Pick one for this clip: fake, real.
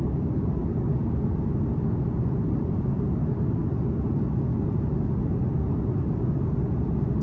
real